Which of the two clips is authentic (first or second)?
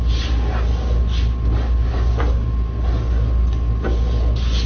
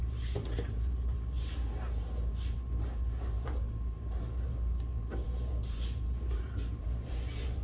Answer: first